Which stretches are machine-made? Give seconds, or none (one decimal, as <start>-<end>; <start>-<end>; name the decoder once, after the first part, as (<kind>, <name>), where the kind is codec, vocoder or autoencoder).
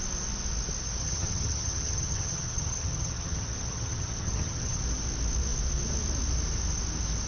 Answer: 1.0-4.8 (vocoder, HiFi-GAN)